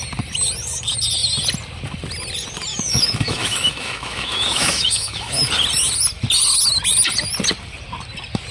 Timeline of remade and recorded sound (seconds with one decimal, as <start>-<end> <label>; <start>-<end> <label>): 0.0-2.7 recorded; 2.7-5.5 remade; 5.5-8.5 recorded